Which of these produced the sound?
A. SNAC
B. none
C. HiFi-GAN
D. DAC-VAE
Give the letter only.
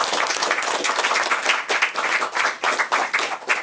B